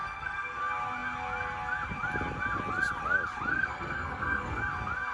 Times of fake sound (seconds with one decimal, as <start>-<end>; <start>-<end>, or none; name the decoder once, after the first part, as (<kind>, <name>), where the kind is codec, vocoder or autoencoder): 0.0-0.6 (codec, SNAC); 3.5-4.6